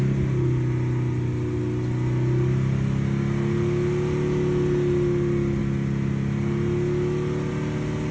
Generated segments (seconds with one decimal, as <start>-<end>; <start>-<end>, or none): none